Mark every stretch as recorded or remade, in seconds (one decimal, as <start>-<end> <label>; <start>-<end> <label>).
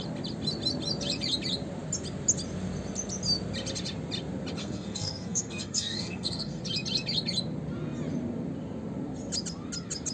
0.0-4.6 recorded; 4.6-6.6 remade; 6.6-10.1 recorded